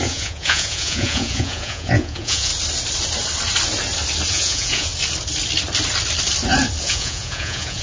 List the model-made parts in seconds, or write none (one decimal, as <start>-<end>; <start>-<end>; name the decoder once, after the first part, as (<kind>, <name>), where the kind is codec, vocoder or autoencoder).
0.0-2.5 (vocoder, Vocos); 4.3-4.9; 6.8-7.8